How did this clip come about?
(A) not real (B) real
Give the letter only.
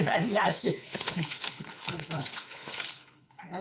A